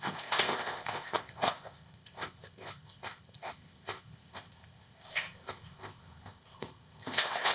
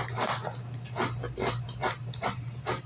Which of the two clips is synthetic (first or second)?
first